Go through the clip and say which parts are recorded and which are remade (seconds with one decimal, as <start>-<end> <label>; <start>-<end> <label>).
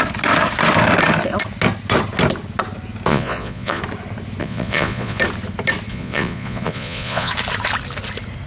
0.0-3.1 recorded; 3.1-3.8 remade; 3.8-4.4 recorded; 4.4-5.2 remade; 5.2-5.9 recorded; 5.9-7.3 remade; 7.3-8.5 recorded